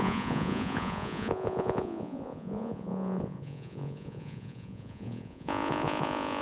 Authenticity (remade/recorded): remade